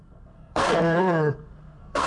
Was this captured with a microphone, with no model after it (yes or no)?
no